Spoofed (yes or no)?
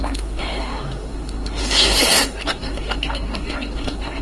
yes